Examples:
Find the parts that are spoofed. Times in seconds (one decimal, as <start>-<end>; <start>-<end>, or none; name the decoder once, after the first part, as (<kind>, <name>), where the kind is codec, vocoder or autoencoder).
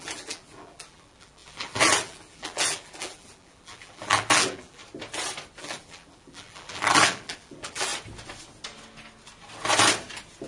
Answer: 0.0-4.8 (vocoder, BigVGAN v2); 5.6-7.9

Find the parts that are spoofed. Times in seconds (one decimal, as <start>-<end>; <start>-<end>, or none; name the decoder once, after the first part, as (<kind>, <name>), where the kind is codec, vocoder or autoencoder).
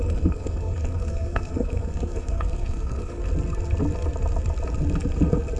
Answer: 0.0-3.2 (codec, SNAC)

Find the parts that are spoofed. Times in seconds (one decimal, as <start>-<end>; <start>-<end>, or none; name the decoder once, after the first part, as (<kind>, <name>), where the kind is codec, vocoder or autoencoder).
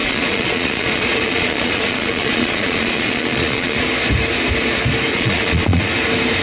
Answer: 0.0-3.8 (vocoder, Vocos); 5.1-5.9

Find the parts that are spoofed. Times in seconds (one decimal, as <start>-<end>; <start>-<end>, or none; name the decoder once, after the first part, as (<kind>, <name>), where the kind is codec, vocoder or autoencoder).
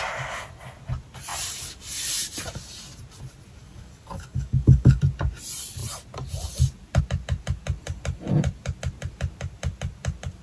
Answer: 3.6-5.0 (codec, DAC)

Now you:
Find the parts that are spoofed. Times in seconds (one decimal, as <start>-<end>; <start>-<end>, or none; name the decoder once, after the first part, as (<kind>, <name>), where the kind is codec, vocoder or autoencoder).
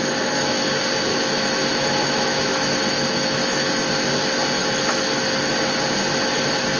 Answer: 1.1-3.7 (autoencoder, DAC-VAE); 4.6-5.5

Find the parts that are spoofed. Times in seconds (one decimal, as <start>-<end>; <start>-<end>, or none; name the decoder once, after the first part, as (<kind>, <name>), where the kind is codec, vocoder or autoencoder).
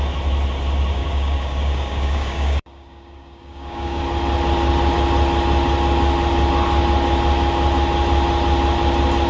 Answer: 1.0-4.0 (codec, DAC)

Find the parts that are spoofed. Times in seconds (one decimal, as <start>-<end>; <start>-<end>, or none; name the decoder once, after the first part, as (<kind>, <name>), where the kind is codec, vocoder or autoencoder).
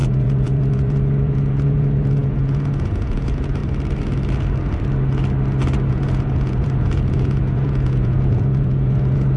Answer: 0.0-3.6 (vocoder, Vocos); 5.9-9.4